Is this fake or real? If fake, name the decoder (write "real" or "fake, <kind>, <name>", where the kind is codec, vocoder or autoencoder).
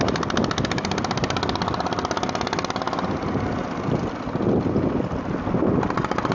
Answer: real